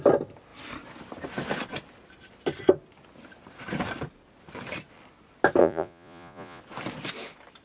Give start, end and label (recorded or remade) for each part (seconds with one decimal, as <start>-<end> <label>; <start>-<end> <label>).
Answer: 0.0-5.6 recorded; 5.6-6.6 remade; 6.6-7.6 recorded